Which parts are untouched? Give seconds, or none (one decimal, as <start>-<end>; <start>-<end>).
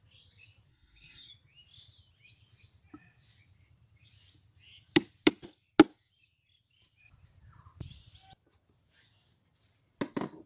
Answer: 0.0-0.7; 1.3-10.5